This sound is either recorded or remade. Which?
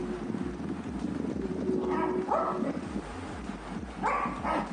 recorded